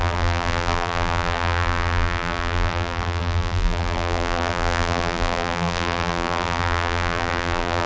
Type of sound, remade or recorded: remade